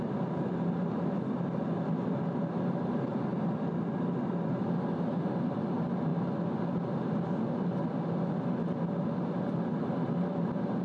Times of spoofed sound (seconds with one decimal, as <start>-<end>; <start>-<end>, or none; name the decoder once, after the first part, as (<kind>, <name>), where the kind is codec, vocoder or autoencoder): none